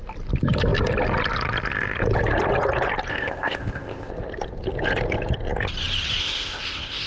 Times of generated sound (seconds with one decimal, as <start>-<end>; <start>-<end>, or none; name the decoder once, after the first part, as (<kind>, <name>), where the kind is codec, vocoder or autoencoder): 3.1-4.1 (codec, ZipCodec); 6.2-7.1